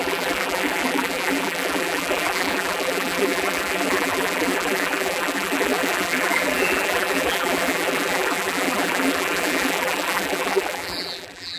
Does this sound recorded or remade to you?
remade